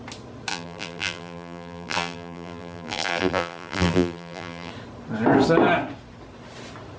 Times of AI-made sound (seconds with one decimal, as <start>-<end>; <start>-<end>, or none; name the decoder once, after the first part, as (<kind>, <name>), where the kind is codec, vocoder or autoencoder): 0.5-4.7 (vocoder, BigVGAN v2)